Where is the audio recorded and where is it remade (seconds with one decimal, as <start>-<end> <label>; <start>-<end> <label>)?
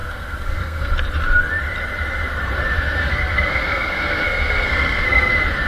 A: 0.0-0.9 remade; 0.9-3.0 recorded; 3.0-5.3 remade; 5.3-5.7 recorded